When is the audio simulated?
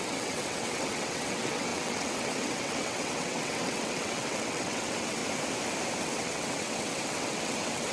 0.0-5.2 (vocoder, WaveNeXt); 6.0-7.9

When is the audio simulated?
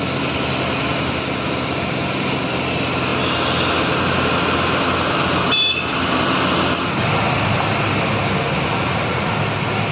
8.7-9.3 (vocoder, Vocos)